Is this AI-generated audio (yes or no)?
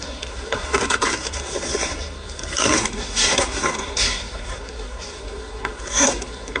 yes